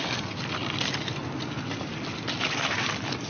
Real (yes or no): yes